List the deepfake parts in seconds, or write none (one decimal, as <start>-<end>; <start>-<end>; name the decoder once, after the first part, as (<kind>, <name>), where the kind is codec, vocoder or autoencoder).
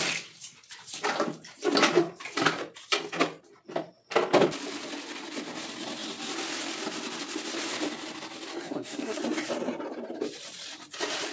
8.6-9.2 (codec, SNAC)